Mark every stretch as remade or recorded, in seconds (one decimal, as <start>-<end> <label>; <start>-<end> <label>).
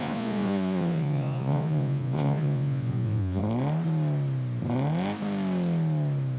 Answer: 0.0-3.4 remade; 3.4-6.4 recorded